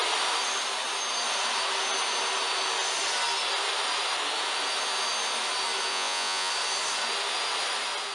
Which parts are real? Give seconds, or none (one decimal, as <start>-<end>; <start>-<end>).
0.0-5.9; 6.5-8.1